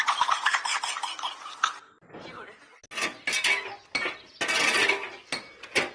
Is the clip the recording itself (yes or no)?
yes